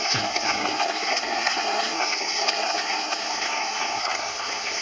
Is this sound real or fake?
fake